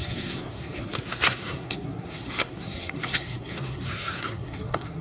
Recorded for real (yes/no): no